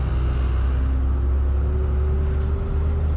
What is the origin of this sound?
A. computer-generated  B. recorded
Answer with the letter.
B